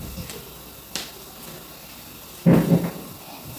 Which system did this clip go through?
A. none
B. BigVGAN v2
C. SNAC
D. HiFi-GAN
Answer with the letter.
A